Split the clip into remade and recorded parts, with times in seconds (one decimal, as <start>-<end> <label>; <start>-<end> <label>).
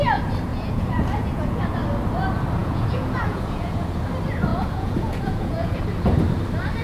0.0-0.5 recorded; 0.5-1.6 remade; 1.6-2.6 recorded; 2.6-4.0 remade; 4.0-4.5 recorded; 4.5-5.8 remade; 5.8-6.8 recorded